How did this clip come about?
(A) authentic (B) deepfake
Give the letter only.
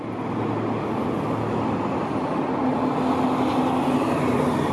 A